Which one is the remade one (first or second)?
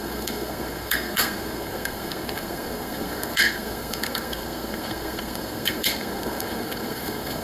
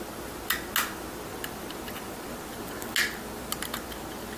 first